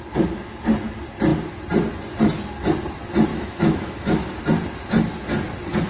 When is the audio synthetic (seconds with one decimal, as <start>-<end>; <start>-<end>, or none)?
3.3-4.4